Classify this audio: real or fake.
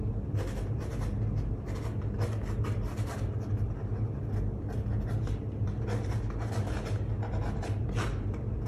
real